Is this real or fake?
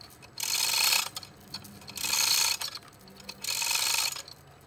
real